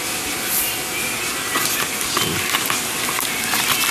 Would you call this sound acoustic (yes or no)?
yes